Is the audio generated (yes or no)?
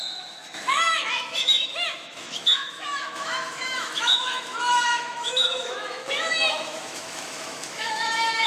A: yes